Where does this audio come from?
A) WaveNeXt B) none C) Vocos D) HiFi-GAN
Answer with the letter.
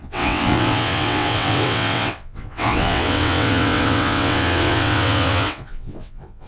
A